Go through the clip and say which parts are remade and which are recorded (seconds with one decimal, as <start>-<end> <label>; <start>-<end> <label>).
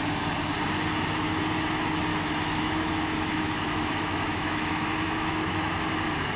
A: 0.0-2.1 recorded; 2.1-5.9 remade; 5.9-6.4 recorded